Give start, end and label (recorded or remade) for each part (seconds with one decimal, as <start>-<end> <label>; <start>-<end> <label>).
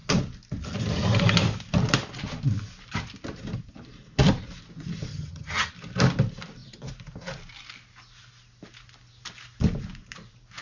0.0-5.1 recorded; 5.1-5.7 remade; 5.7-10.6 recorded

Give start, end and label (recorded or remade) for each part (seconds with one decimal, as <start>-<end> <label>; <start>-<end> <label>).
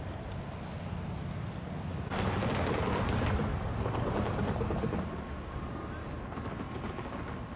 0.0-7.6 recorded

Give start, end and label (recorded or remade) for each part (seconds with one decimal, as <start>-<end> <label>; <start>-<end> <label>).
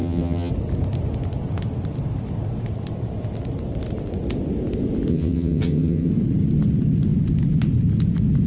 0.0-0.5 remade; 0.5-5.1 recorded; 5.1-6.1 remade; 6.1-8.5 recorded